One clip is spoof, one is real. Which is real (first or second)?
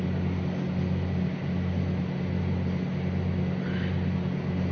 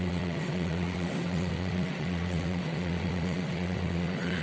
first